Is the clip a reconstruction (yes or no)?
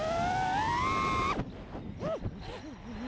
no